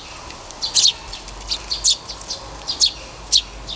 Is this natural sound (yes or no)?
yes